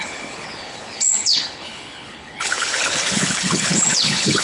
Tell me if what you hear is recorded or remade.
remade